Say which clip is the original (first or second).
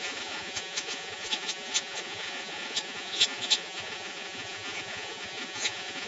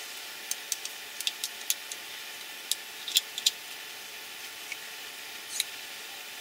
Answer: second